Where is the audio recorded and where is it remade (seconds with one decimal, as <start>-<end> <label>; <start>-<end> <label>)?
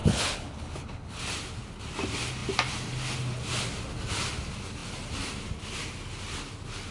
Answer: 0.0-1.2 remade; 1.2-6.9 recorded